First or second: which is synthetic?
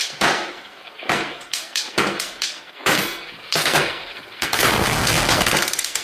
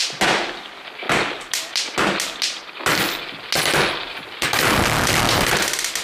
first